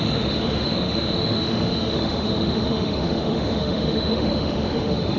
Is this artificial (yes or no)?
yes